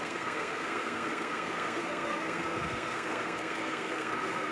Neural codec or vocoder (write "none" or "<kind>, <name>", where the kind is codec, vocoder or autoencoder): codec, SNAC